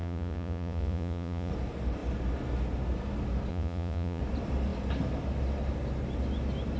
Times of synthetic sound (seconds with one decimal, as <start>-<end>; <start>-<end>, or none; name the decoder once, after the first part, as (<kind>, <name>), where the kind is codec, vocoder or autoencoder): 0.0-1.5 (vocoder, Vocos); 3.5-4.2